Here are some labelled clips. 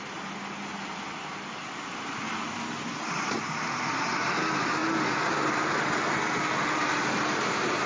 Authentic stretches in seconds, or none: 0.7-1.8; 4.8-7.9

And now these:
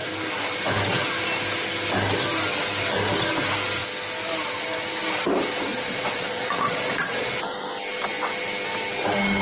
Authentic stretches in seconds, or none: 0.0-5.7; 7.3-9.4

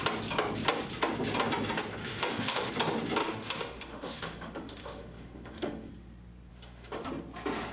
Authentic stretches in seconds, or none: 0.0-2.0; 2.7-3.2; 5.9-6.5; 7.1-7.7